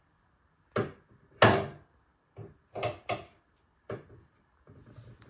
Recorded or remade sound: recorded